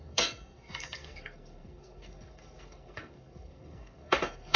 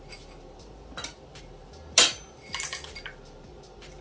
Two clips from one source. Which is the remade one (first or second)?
first